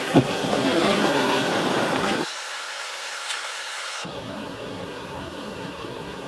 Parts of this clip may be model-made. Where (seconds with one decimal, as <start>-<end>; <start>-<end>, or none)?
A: 0.0-1.5; 2.0-6.3